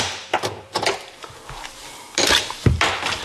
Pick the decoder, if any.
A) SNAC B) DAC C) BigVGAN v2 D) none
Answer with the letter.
C